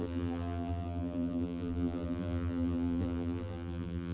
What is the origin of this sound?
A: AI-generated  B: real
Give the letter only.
A